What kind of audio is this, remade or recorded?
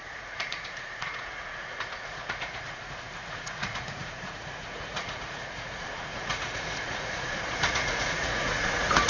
remade